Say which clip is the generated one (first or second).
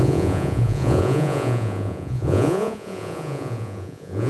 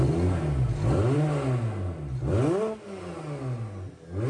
first